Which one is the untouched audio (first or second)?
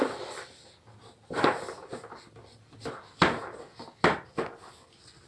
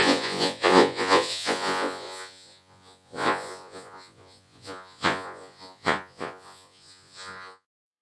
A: first